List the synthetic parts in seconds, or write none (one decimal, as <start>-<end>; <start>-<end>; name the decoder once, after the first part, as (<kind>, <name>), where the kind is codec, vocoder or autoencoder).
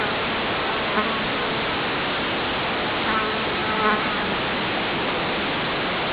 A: none